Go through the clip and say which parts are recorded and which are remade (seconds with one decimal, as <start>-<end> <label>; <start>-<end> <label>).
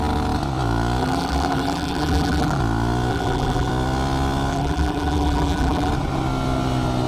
0.0-1.0 recorded; 1.0-2.6 remade; 2.6-3.1 recorded; 3.1-3.7 remade; 3.7-4.5 recorded; 4.5-5.9 remade; 5.9-7.1 recorded